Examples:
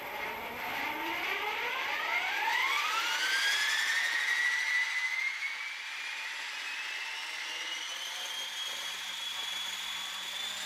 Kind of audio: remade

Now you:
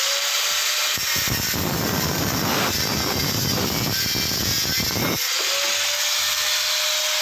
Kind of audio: recorded